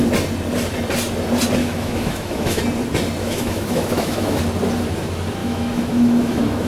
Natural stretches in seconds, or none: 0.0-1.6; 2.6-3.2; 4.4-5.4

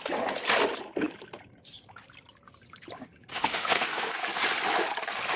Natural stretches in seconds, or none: 0.0-3.3; 4.1-5.4

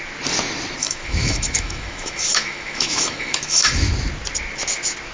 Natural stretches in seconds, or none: 0.0-0.8; 3.9-5.1

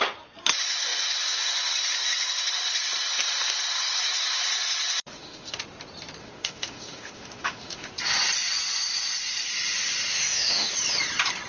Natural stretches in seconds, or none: 0.0-5.0; 5.6-6.2; 7.9-10.1; 10.7-11.5

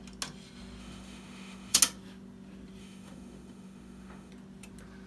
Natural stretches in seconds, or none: 0.0-0.8; 1.8-2.8; 4.3-5.1

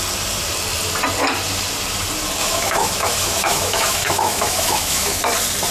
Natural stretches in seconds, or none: 0.0-2.4; 5.2-5.7

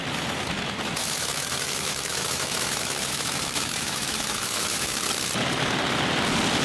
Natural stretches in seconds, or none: 0.0-1.0; 5.0-6.6

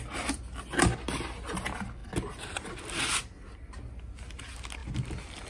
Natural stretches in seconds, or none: 0.0-5.5